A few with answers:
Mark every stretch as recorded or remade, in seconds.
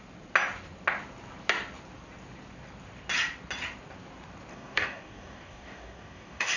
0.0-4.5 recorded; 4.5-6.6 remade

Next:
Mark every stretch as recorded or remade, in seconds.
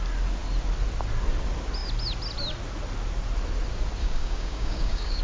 0.0-4.0 recorded; 4.0-5.2 remade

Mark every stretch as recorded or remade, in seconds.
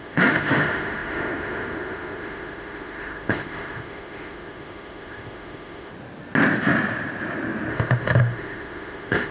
0.0-5.9 remade; 5.9-7.7 recorded; 7.7-9.3 remade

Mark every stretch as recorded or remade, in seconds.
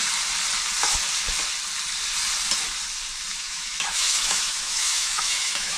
0.0-3.3 recorded; 3.3-5.8 remade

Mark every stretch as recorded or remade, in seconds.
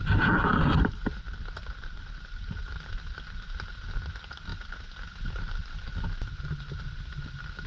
0.0-7.7 recorded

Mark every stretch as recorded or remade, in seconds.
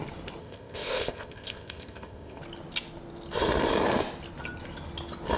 0.0-0.4 recorded; 0.4-2.4 remade; 2.4-5.4 recorded